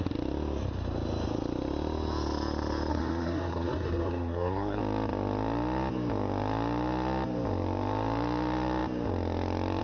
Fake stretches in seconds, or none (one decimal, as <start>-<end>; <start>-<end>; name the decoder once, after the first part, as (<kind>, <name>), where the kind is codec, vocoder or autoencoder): 2.9-4.8 (codec, SNAC)